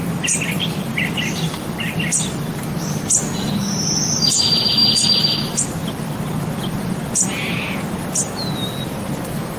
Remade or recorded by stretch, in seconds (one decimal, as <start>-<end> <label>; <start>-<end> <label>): 0.0-9.6 recorded